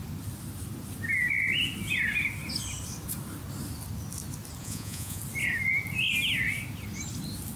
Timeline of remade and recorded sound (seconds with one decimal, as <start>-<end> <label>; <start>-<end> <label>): 0.0-4.6 recorded; 4.6-5.2 remade; 5.2-7.6 recorded